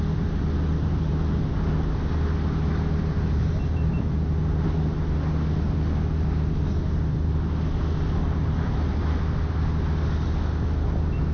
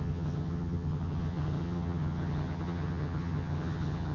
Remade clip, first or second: second